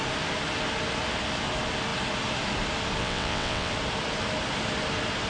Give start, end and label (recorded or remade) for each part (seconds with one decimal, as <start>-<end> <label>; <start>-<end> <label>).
0.0-3.0 recorded; 3.0-3.7 remade; 3.7-5.3 recorded